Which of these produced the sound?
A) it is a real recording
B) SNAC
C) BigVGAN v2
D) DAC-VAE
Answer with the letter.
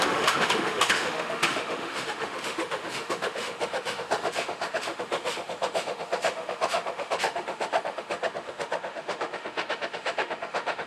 D